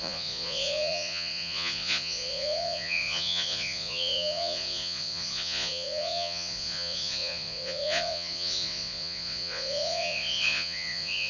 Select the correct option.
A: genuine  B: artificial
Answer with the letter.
B